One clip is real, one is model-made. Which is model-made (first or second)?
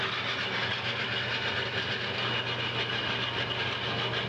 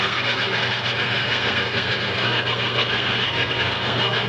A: second